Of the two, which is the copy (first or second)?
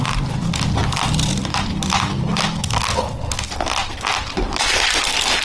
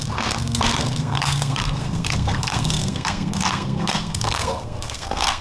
second